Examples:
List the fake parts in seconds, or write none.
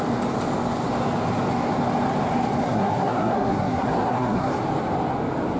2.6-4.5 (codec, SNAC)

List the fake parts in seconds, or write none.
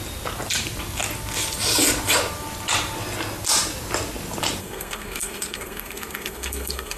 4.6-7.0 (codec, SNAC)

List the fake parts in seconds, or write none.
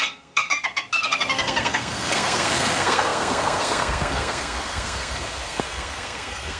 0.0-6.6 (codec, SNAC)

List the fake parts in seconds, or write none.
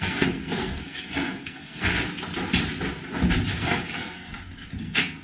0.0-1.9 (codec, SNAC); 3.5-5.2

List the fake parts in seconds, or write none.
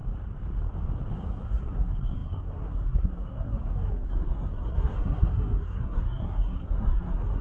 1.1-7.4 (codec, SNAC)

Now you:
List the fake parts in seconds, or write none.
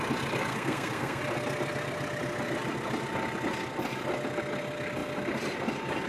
0.5-1.2 (codec, SNAC)